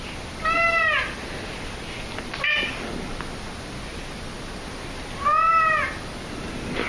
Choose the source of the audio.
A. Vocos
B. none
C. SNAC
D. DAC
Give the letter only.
B